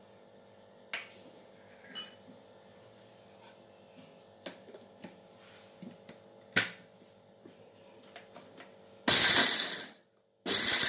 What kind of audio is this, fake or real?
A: real